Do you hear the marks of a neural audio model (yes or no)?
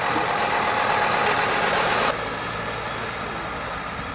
no